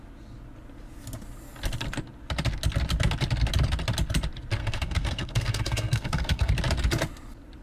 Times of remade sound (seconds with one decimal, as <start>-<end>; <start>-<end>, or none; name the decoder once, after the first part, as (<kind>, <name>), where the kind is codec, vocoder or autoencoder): 4.6-6.5 (codec, SNAC)